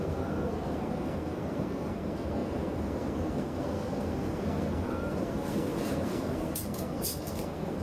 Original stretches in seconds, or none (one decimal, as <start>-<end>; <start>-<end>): none